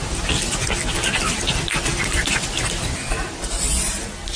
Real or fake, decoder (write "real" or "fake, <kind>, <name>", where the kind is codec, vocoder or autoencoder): real